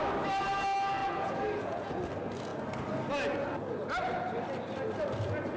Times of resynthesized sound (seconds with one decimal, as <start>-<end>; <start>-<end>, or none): 1.0-2.0